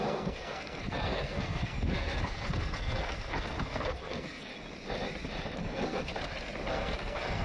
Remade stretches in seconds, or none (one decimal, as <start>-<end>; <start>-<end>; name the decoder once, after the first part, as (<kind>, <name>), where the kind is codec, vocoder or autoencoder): 0.0-4.5 (codec, SNAC); 5.6-6.1; 6.7-7.4